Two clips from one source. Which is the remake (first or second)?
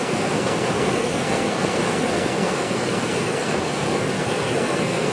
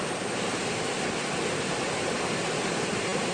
first